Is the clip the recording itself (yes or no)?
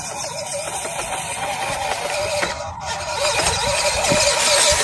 yes